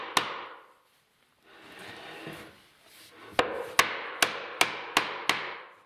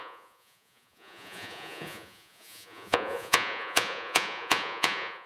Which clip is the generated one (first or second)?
second